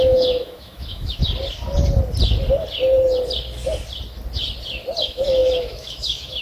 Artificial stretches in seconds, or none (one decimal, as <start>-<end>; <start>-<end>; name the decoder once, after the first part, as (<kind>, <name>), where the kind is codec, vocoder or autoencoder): 0.0-1.2 (autoencoder, DAC-VAE); 5.0-6.4